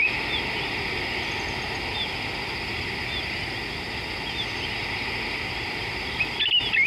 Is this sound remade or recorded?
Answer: recorded